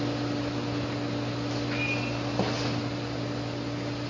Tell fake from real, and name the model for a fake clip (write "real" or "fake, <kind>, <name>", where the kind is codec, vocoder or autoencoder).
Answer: real